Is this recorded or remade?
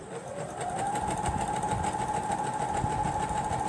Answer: recorded